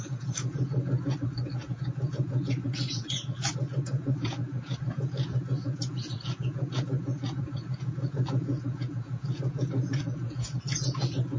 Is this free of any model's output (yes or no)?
no